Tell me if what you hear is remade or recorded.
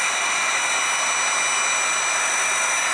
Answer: recorded